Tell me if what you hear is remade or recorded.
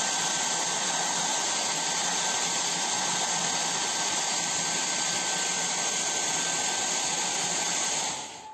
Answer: recorded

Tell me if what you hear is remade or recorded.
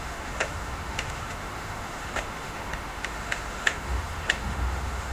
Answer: remade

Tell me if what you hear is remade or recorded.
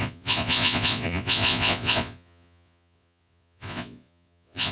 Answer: remade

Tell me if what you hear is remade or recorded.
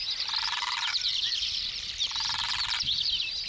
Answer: recorded